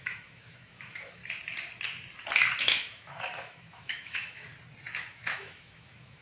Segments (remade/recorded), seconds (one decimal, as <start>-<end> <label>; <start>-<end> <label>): 0.0-1.2 remade; 1.2-2.6 recorded; 2.6-4.5 remade; 4.5-5.1 recorded; 5.1-6.2 remade